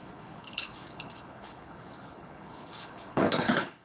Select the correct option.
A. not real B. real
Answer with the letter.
A